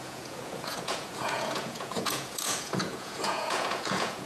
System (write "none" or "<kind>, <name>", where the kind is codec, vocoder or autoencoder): vocoder, Vocos